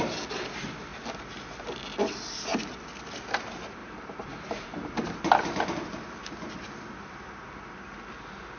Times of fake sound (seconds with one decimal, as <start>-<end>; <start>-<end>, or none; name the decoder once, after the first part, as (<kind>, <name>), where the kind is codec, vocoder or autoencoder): 3.8-5.2 (vocoder, BigVGAN v2)